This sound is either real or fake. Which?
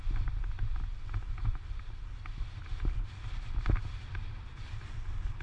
real